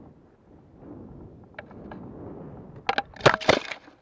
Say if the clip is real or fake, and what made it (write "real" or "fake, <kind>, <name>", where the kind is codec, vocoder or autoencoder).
real